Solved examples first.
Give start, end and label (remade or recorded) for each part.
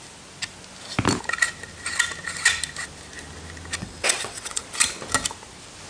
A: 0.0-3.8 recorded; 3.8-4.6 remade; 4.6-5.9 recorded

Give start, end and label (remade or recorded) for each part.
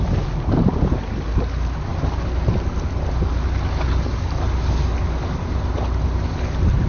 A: 0.0-6.9 recorded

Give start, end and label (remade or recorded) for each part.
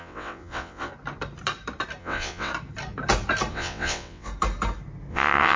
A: 0.0-0.9 remade; 0.9-2.0 recorded; 2.0-2.5 remade; 2.5-3.5 recorded; 3.5-4.3 remade; 4.3-5.1 recorded; 5.1-5.6 remade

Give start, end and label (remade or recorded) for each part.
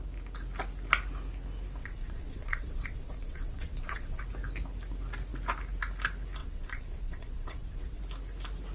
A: 0.0-1.8 recorded; 1.8-4.2 remade; 4.2-6.4 recorded; 6.4-8.0 remade; 8.0-8.7 recorded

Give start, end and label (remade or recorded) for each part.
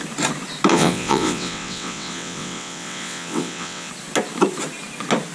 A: 0.0-0.7 recorded; 0.7-3.9 remade; 3.9-5.3 recorded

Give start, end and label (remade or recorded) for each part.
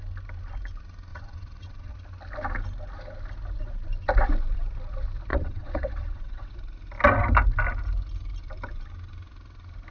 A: 0.0-1.1 recorded; 1.1-1.9 remade; 1.9-5.3 recorded; 5.3-6.5 remade; 6.5-9.9 recorded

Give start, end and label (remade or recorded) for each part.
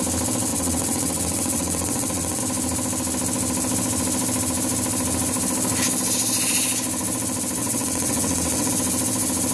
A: 0.0-0.5 recorded; 0.5-2.4 remade; 2.4-7.6 recorded; 7.6-8.7 remade; 8.7-9.5 recorded